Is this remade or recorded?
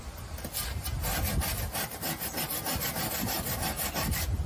recorded